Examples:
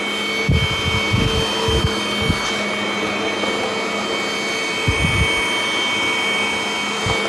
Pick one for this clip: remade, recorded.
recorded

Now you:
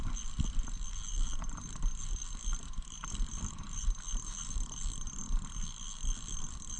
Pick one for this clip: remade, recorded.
recorded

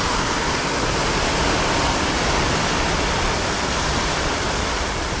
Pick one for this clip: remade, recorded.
recorded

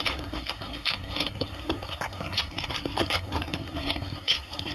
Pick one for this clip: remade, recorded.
remade